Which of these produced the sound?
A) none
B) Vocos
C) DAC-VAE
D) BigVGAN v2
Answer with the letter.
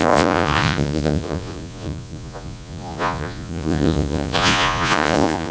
B